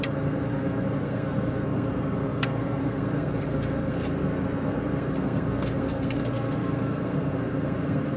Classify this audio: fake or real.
fake